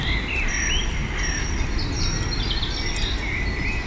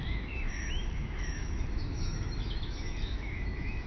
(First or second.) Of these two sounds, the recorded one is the first